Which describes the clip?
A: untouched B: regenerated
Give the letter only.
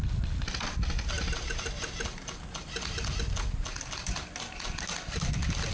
A